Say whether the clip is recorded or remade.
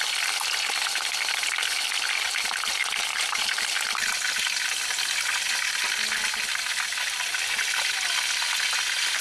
recorded